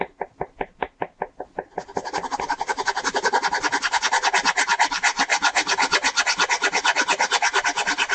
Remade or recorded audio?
recorded